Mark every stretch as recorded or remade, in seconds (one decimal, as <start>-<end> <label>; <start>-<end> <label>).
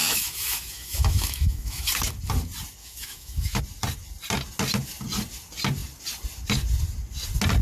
0.0-1.9 remade; 1.9-2.8 recorded; 2.8-3.6 remade; 3.6-7.6 recorded